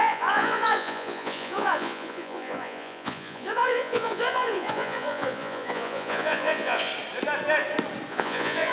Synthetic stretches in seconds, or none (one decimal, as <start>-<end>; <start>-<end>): 0.0-6.9; 8.1-8.7